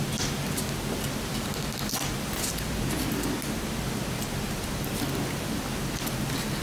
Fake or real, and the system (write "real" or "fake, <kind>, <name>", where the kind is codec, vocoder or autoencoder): fake, vocoder, BigVGAN v2